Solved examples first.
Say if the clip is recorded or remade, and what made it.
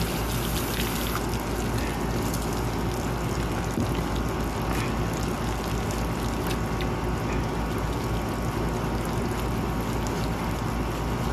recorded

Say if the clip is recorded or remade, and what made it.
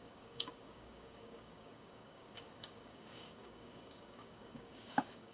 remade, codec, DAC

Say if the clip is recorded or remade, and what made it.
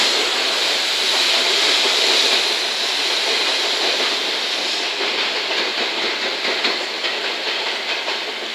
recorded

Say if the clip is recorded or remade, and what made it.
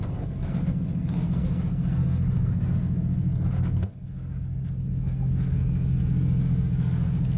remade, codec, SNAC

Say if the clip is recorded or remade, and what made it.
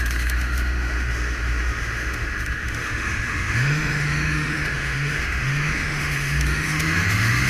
remade, autoencoder, DAC-VAE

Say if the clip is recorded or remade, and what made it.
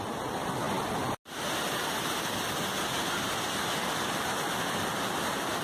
recorded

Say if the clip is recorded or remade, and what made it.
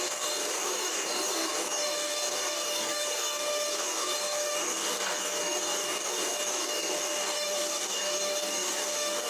remade, codec, DAC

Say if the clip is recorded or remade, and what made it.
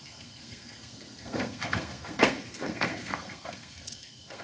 remade, codec, SNAC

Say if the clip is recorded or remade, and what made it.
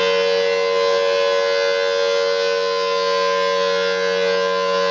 recorded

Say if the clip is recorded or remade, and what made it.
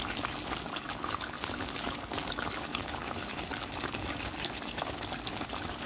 remade, codec, DAC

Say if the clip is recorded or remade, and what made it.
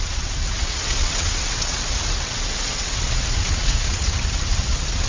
remade, vocoder, WaveNeXt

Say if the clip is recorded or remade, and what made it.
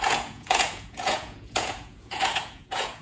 remade, vocoder, Vocos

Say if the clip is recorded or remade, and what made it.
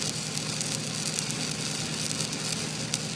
recorded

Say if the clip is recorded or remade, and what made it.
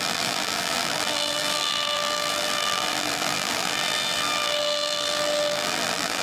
remade, vocoder, BigVGAN v2